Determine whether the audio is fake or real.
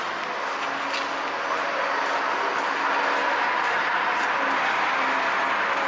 real